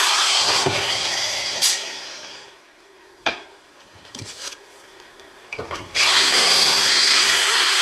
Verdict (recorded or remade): remade